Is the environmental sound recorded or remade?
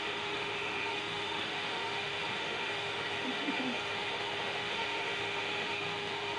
remade